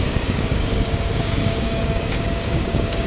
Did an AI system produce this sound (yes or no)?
yes